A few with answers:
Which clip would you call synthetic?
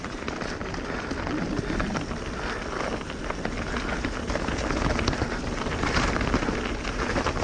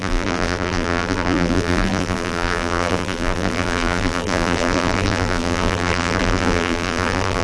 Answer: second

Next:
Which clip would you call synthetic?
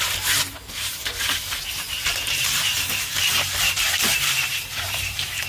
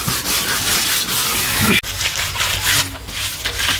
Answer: first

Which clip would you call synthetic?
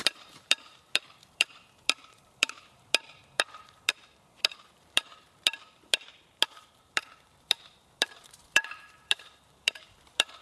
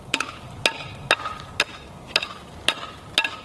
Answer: first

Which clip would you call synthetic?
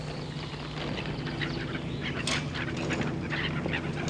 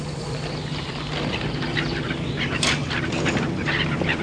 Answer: second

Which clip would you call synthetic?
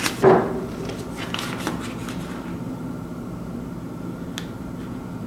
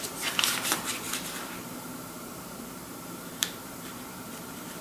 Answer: second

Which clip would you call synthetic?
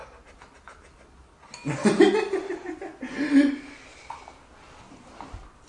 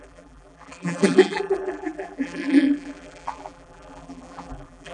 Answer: second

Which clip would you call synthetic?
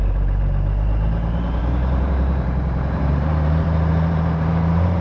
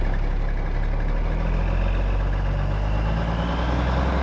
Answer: first